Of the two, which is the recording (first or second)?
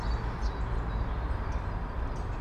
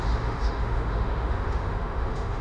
first